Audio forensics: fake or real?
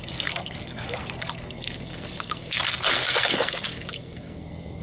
fake